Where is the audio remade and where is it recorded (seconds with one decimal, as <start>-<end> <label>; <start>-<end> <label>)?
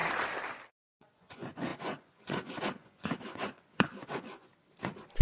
0.0-0.8 recorded; 0.8-4.5 remade; 4.5-5.2 recorded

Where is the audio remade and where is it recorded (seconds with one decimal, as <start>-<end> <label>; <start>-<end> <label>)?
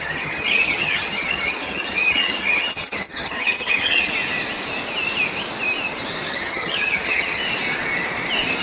0.0-4.1 remade; 4.1-6.3 recorded; 6.3-7.4 remade; 7.4-8.6 recorded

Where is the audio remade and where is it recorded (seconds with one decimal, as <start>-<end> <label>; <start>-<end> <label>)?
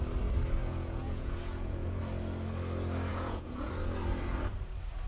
0.0-0.6 recorded; 0.6-2.0 remade; 2.0-3.1 recorded; 3.1-3.7 remade; 3.7-5.1 recorded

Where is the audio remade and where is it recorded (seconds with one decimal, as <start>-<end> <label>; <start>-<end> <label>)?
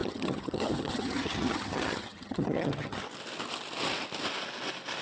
0.0-3.0 remade; 3.0-5.0 recorded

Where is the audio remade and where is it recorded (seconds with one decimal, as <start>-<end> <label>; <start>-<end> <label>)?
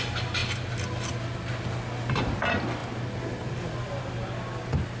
0.0-5.0 recorded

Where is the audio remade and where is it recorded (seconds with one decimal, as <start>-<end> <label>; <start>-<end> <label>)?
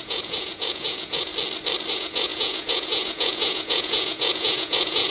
0.0-1.3 remade; 1.3-1.9 recorded; 1.9-5.1 remade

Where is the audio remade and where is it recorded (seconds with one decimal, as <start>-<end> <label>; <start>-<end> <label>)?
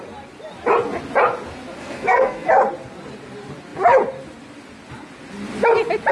0.0-1.8 recorded; 1.8-2.5 remade; 2.5-6.1 recorded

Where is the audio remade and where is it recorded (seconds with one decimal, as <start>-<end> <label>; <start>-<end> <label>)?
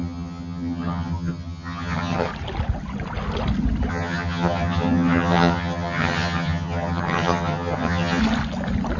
0.0-2.3 remade; 2.3-3.9 recorded; 3.9-8.2 remade; 8.2-9.0 recorded